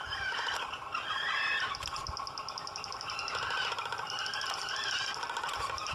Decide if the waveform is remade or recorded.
recorded